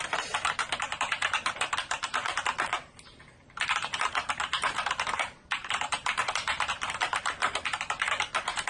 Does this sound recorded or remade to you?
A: remade